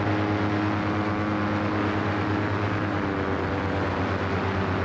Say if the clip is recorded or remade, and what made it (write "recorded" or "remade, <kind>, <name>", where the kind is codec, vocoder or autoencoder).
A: recorded